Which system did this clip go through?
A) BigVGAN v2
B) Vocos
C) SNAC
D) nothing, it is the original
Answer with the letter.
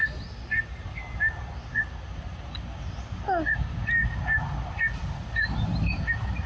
D